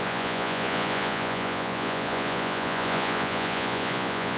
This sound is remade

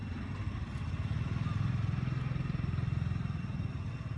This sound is recorded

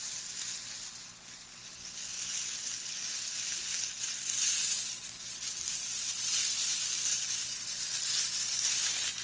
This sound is recorded